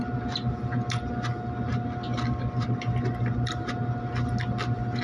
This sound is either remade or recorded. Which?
recorded